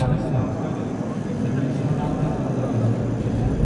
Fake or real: real